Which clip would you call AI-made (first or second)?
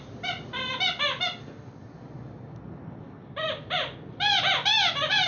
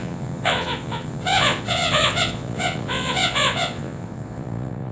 second